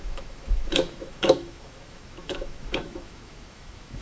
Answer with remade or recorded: remade